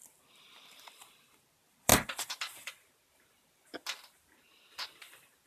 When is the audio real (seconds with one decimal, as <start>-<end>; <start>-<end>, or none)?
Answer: 0.0-5.5